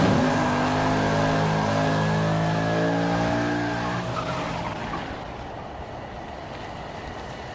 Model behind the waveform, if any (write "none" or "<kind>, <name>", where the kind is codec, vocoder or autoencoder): none